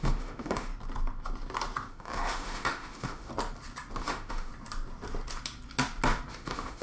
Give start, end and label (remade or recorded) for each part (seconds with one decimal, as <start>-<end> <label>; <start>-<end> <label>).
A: 0.0-0.7 remade; 0.7-1.9 recorded; 1.9-3.3 remade; 3.3-4.0 recorded; 4.0-4.5 remade; 4.5-6.3 recorded; 6.3-6.8 remade